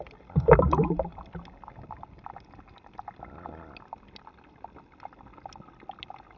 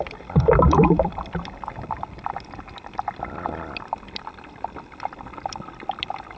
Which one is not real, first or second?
second